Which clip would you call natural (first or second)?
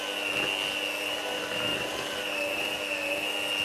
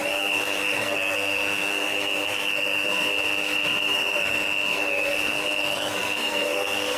first